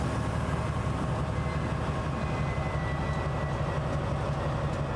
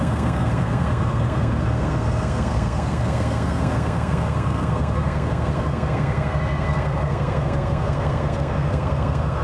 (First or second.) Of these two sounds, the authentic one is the first